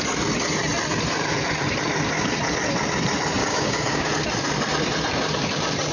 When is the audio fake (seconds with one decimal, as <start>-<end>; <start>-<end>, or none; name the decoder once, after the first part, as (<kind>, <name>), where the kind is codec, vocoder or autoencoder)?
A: 3.4-4.1 (codec, DAC)